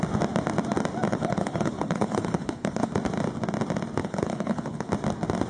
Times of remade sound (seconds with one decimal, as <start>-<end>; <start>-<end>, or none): 1.1-2.9; 4.0-4.9